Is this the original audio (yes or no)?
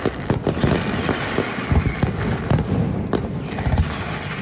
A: yes